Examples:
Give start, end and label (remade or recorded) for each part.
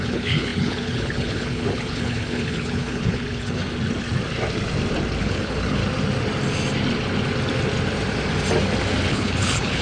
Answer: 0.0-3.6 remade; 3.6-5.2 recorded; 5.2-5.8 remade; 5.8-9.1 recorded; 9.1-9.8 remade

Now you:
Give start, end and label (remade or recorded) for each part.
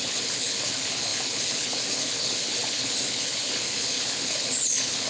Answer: 0.0-5.1 remade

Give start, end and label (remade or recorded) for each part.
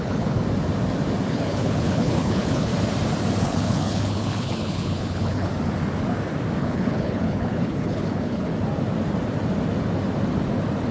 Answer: 0.0-0.4 remade; 0.4-1.3 recorded; 1.3-2.7 remade; 2.7-3.4 recorded; 3.4-5.5 remade; 5.5-6.6 recorded; 6.6-8.5 remade; 8.5-10.9 recorded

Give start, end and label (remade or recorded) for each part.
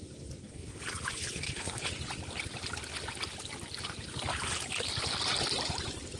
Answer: 0.0-0.4 recorded; 0.4-1.9 remade; 1.9-6.2 recorded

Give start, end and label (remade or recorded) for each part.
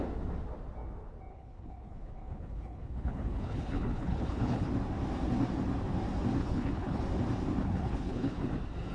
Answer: 0.0-1.3 recorded; 1.3-4.7 remade; 4.7-6.4 recorded; 6.4-7.0 remade; 7.0-7.6 recorded; 7.6-8.4 remade; 8.4-8.9 recorded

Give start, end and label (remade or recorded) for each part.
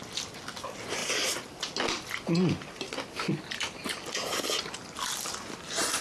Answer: 0.0-6.0 recorded